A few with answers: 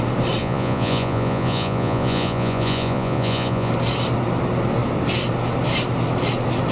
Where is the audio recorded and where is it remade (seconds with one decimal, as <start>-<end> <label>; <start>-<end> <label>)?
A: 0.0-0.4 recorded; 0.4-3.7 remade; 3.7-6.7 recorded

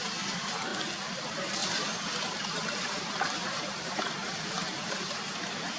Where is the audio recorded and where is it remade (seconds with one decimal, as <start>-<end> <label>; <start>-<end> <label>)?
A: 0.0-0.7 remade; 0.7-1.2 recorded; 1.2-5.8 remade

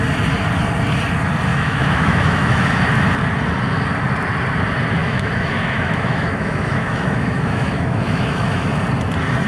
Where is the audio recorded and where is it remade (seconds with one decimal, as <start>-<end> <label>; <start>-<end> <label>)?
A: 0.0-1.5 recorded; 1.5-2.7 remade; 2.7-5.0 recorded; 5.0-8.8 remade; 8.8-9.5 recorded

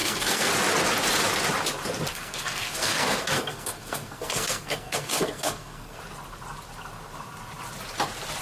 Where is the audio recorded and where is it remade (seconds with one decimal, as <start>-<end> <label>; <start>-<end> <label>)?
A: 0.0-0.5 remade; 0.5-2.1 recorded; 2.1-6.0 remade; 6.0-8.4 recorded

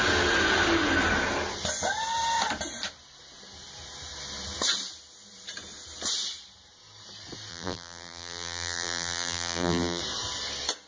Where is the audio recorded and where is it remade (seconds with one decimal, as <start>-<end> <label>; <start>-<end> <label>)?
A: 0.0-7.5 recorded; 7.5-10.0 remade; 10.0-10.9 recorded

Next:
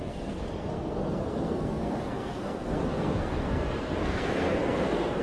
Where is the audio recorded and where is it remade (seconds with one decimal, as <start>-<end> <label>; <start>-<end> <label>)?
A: 0.0-5.2 remade